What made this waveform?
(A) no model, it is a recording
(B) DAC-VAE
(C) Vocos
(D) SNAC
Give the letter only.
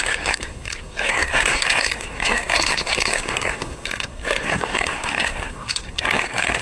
D